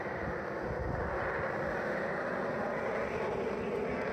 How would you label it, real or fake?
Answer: real